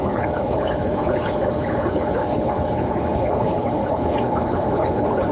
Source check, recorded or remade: remade